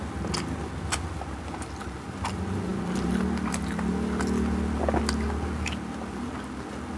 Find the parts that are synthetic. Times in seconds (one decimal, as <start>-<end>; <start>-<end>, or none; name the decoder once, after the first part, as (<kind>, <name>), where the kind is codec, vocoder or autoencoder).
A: none